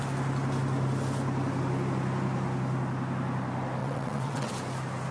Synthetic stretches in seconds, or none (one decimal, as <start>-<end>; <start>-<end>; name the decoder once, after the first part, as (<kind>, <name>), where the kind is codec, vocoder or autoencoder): 3.8-4.5 (vocoder, WaveNeXt)